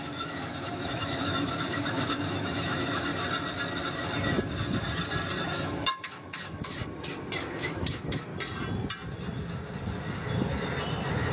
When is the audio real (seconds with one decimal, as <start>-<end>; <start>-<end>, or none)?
3.1-5.4; 6.8-7.4; 8.3-11.3